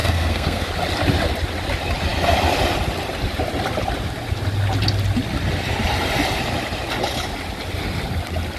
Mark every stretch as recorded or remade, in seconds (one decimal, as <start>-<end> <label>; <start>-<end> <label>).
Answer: 0.0-0.7 remade; 0.7-8.6 recorded